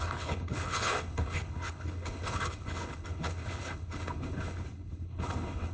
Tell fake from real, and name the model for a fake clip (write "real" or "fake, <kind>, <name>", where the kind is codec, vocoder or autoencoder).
fake, codec, HILCodec